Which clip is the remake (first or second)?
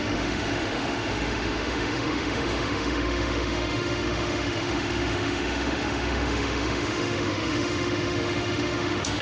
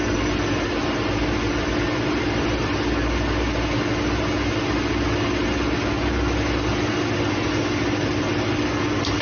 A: first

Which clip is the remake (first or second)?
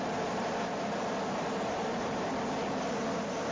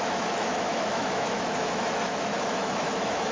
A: second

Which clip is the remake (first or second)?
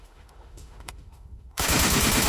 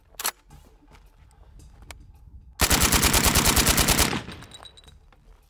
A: first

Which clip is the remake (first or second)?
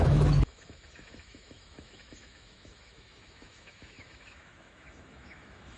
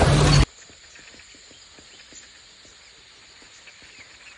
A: first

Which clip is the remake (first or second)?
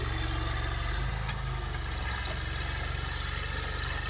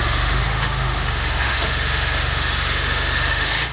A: second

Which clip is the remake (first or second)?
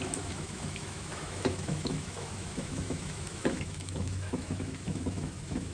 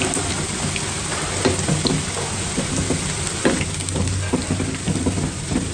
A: first